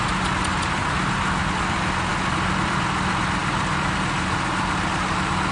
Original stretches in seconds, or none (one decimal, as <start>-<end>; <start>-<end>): 0.0-5.5